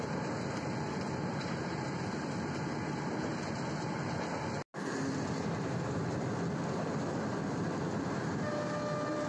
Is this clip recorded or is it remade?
recorded